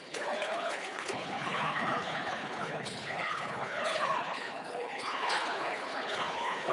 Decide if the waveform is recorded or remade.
remade